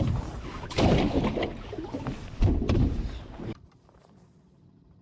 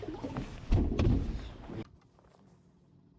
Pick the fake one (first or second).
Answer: first